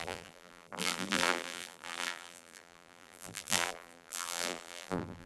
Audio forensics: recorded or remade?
remade